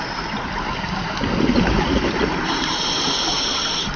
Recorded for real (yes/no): yes